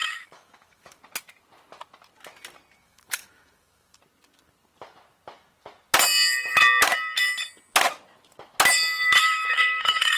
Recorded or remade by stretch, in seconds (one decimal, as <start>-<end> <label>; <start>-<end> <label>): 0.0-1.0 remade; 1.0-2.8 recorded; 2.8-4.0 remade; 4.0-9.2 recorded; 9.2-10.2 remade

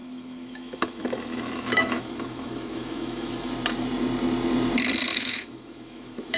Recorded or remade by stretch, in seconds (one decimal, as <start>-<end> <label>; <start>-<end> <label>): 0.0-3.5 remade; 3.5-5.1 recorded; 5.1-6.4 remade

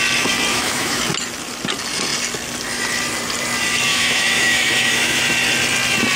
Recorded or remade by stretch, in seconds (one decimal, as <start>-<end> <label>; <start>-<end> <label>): 0.0-0.5 recorded; 0.5-1.0 remade; 1.0-3.9 recorded; 3.9-5.2 remade; 5.2-6.2 recorded